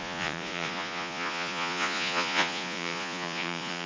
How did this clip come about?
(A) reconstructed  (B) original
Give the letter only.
A